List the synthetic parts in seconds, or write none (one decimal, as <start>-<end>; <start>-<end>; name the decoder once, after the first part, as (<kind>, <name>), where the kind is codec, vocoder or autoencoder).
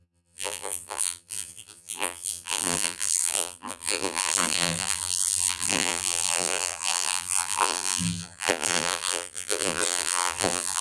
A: 0.0-10.8 (vocoder, BigVGAN v2)